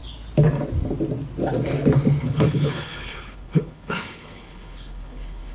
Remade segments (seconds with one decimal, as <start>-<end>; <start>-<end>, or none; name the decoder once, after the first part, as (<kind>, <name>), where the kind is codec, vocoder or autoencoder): 2.2-5.5 (codec, HILCodec)